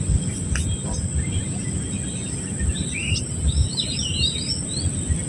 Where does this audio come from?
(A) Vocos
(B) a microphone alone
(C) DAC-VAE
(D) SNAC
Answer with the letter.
B